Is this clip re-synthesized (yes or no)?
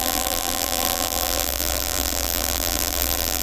yes